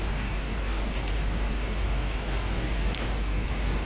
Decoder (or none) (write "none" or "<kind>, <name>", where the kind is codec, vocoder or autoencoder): codec, DAC